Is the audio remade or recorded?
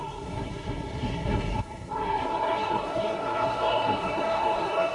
remade